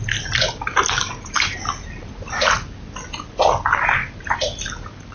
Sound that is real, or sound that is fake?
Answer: real